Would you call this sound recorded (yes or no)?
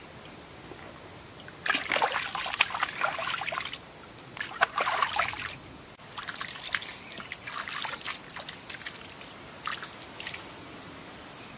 yes